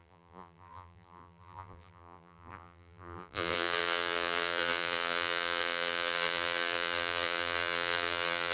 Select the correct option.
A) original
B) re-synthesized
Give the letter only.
B